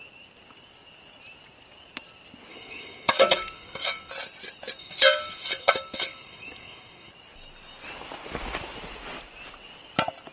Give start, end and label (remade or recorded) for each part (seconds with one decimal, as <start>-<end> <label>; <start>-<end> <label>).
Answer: 0.0-2.5 recorded; 2.5-4.1 remade; 4.1-4.8 recorded; 4.8-7.1 remade; 7.1-10.3 recorded